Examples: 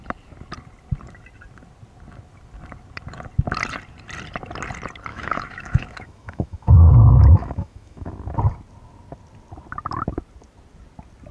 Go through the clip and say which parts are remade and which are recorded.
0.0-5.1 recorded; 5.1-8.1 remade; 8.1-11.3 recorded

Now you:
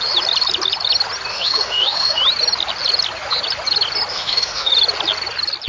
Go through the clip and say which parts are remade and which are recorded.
0.0-1.3 recorded; 1.3-2.2 remade; 2.2-4.1 recorded; 4.1-4.7 remade; 4.7-5.7 recorded

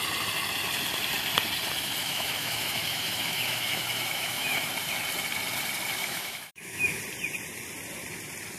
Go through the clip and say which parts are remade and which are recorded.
0.0-2.0 recorded; 2.0-4.7 remade; 4.7-6.0 recorded; 6.0-7.0 remade; 7.0-8.6 recorded